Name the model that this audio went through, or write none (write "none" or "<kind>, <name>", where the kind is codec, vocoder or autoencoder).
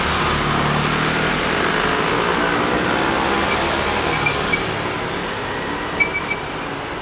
none